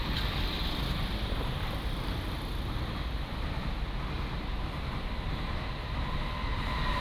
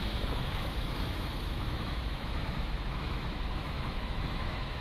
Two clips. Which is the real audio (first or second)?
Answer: first